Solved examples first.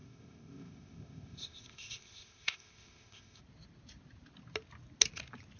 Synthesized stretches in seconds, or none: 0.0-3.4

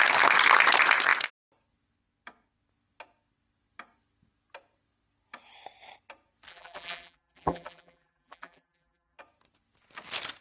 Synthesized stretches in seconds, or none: 6.5-9.2

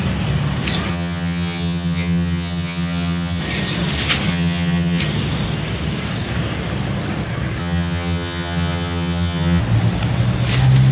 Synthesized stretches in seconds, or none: 0.9-3.4; 4.3-5.0; 7.6-9.6

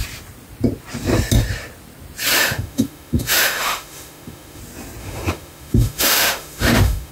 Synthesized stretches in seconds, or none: 2.4-4.6; 5.0-7.1